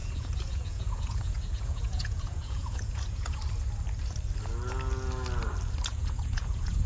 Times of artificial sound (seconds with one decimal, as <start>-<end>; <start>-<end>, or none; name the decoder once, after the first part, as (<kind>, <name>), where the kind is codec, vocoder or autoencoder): 0.0-3.4 (vocoder, Vocos); 5.9-6.9